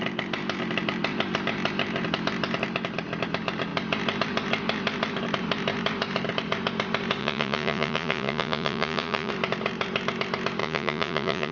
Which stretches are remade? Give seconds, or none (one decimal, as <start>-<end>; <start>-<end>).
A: 7.2-9.3; 10.6-11.5